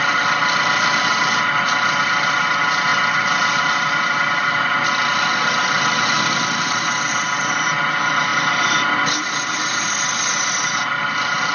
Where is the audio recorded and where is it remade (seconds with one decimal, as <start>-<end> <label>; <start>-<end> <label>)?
0.0-11.5 recorded